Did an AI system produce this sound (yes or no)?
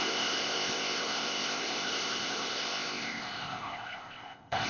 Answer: yes